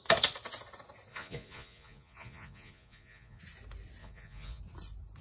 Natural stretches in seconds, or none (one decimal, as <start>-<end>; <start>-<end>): 0.0-1.1; 3.4-4.0; 4.6-5.2